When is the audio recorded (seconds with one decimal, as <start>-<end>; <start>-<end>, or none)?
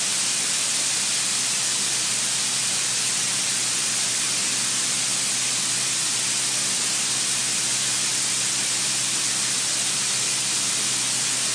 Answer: 0.0-11.5